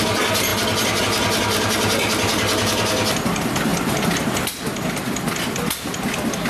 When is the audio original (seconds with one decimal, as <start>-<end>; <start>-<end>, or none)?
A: 0.0-6.5